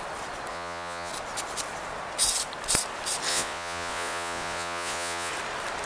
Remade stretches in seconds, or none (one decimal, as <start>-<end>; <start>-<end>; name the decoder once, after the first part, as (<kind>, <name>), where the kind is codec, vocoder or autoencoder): 0.5-1.1 (vocoder, Vocos); 3.3-5.3